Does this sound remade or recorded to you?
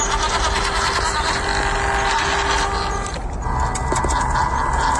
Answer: recorded